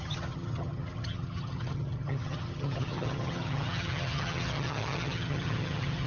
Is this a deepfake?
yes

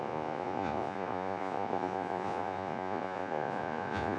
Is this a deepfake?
yes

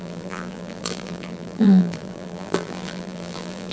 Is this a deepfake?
yes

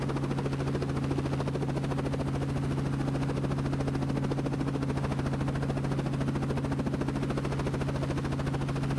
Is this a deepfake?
no